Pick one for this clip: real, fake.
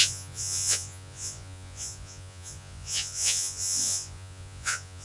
fake